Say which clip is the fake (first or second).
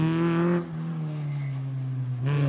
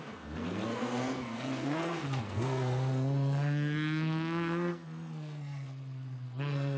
second